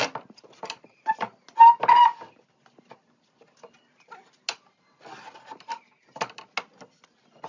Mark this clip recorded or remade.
recorded